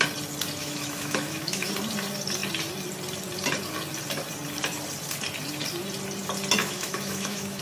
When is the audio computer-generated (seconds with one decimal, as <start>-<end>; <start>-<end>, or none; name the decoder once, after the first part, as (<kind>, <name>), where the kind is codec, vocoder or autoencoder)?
0.6-1.7 (autoencoder, DAC-VAE); 6.6-7.6